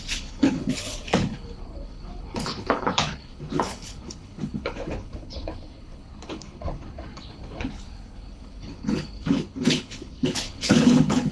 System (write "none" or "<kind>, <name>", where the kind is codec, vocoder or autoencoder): codec, HILCodec